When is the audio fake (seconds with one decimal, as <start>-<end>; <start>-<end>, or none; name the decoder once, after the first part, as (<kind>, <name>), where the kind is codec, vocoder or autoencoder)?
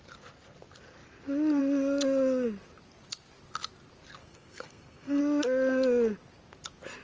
4.2-5.2 (codec, SNAC)